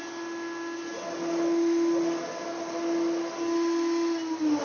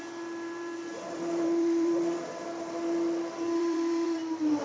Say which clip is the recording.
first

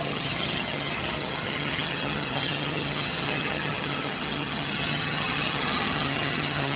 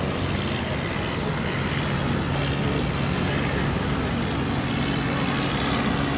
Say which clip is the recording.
second